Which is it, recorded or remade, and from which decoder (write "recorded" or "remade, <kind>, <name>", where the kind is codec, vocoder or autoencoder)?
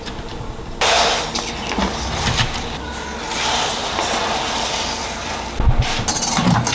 recorded